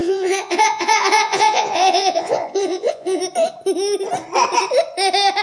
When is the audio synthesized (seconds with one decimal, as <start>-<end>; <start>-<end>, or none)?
0.0-3.2